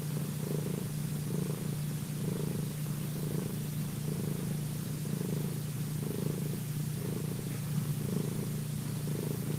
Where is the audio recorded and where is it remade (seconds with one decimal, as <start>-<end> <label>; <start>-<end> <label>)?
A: 0.0-7.9 recorded; 7.9-9.6 remade